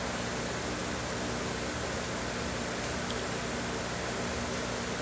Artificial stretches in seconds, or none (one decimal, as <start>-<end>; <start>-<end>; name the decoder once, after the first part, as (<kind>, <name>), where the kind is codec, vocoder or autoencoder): none